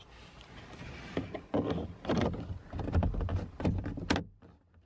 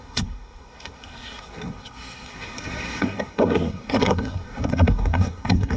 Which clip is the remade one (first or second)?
second